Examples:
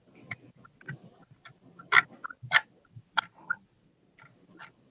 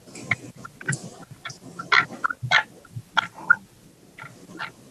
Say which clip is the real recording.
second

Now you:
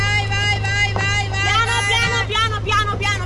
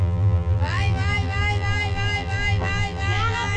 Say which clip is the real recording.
first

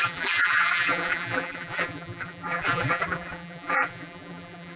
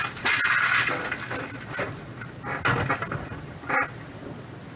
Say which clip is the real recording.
second